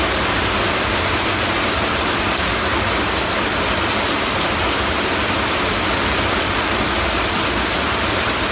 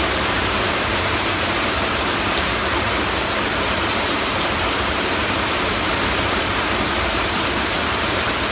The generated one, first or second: second